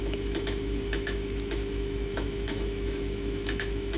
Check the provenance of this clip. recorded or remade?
remade